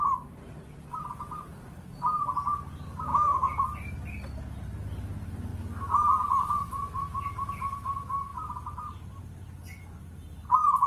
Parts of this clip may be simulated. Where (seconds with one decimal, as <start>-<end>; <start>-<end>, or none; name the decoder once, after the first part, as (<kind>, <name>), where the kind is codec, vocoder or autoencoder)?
3.1-3.6 (autoencoder, DAC-VAE)